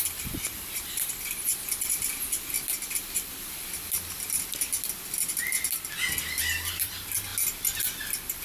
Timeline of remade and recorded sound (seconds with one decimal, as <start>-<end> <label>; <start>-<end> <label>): 0.0-1.5 remade; 1.5-6.4 recorded; 6.4-7.3 remade; 7.3-7.8 recorded; 7.8-8.4 remade